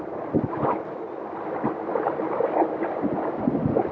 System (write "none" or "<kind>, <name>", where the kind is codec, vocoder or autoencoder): none